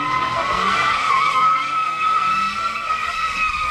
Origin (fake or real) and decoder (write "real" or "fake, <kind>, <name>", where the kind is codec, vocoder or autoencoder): fake, codec, SNAC